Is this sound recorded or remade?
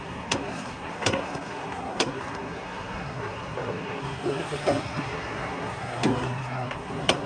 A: remade